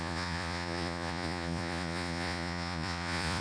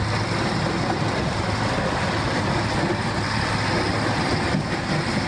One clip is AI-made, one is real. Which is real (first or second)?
second